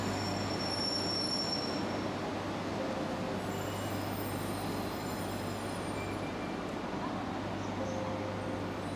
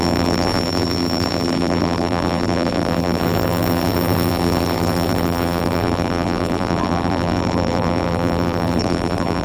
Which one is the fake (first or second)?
second